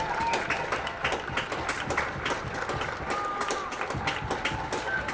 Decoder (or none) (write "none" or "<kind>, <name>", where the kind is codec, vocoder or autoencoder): none